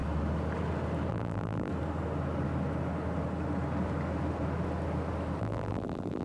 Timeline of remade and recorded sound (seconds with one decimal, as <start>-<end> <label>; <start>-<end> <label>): 0.0-1.1 recorded; 1.1-1.7 remade; 1.7-5.4 recorded; 5.4-6.2 remade